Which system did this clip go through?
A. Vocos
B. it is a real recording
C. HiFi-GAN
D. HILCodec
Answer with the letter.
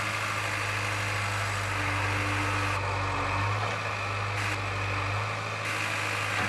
B